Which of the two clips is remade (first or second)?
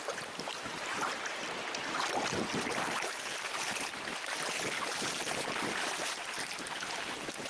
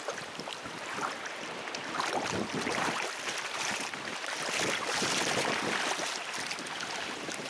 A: second